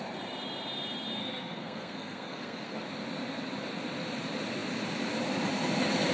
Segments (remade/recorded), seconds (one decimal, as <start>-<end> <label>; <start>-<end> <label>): 0.0-1.2 recorded; 1.2-2.8 remade; 2.8-6.1 recorded